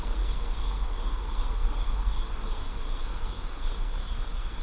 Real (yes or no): no